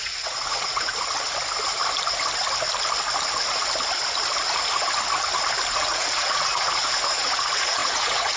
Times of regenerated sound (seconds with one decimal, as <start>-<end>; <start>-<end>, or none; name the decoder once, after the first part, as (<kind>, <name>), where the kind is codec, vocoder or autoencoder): 0.0-0.9 (vocoder, Vocos); 5.8-8.4